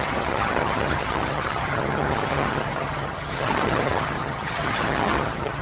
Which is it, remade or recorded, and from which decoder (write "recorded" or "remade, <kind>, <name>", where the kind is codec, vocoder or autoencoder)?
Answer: remade, vocoder, HiFi-GAN